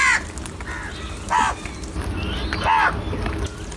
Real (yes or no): yes